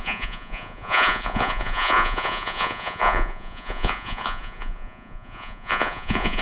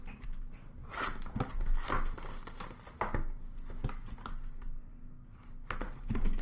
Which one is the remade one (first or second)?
first